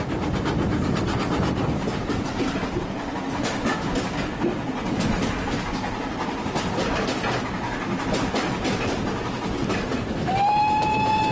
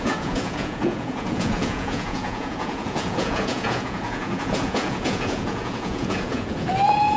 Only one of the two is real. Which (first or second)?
first